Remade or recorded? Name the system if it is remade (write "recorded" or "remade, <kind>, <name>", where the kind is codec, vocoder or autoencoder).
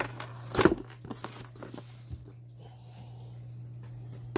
recorded